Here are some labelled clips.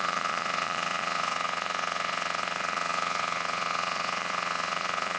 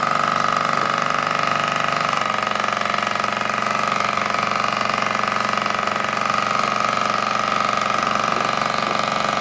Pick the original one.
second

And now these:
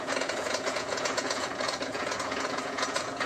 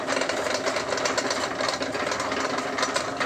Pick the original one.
second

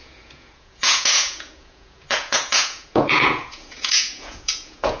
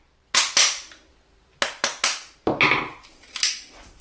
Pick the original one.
second